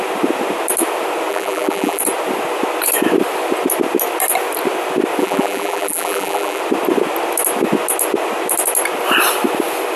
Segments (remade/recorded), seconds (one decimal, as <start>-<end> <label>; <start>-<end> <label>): 0.0-1.3 recorded; 1.3-2.0 remade; 2.0-5.2 recorded; 5.2-6.6 remade; 6.6-10.0 recorded